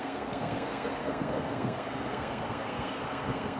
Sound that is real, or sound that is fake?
fake